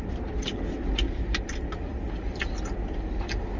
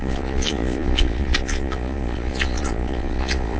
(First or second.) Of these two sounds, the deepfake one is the second